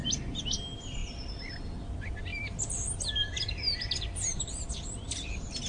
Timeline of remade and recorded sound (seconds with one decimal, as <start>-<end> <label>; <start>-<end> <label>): 0.0-1.0 recorded; 1.0-1.6 remade; 1.6-2.3 recorded; 2.3-3.1 remade; 3.1-4.3 recorded; 4.3-4.9 remade; 4.9-5.7 recorded